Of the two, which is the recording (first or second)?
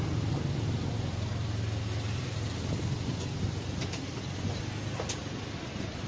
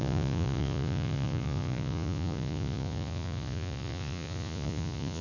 first